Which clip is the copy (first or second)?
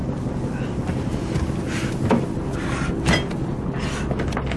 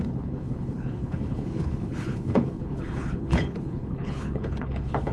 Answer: second